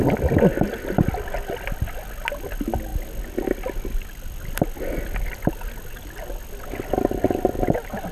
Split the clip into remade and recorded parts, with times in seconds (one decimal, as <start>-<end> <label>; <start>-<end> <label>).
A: 0.0-8.1 recorded